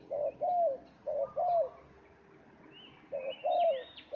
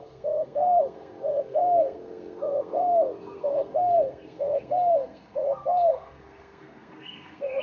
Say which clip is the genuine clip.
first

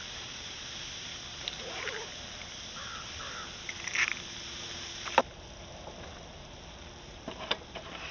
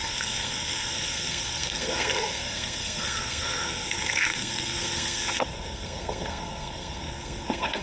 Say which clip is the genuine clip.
first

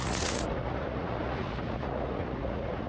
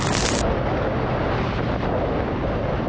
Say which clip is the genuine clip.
second